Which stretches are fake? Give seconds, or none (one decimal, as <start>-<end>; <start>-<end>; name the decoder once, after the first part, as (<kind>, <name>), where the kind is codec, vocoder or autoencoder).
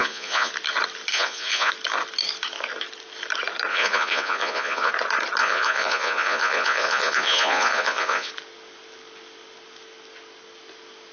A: 0.0-0.5 (vocoder, Vocos); 1.1-1.7; 3.7-4.9; 5.4-8.3